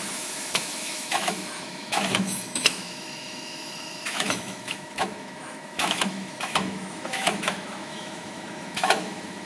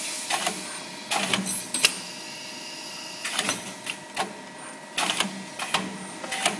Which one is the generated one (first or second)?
first